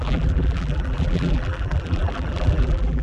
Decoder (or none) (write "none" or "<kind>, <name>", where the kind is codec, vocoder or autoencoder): vocoder, BigVGAN v2